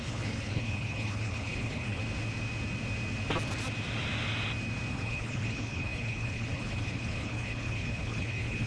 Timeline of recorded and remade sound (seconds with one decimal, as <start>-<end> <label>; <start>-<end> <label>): 0.0-2.0 remade; 2.0-4.9 recorded; 4.9-8.7 remade